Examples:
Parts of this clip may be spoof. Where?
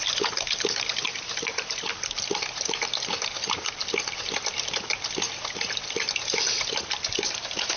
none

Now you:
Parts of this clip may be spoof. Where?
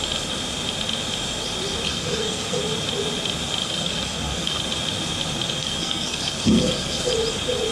1.9-2.6 (codec, SNAC); 3.6-4.6; 5.6-7.1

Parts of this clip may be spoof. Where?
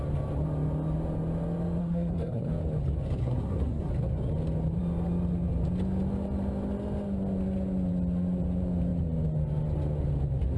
1.8-2.5 (codec, SNAC); 3.2-3.9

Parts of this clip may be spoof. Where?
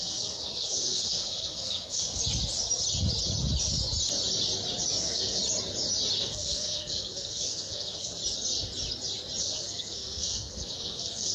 0.0-2.2 (codec, SNAC); 5.0-5.4; 6.2-8.2; 9.4-11.3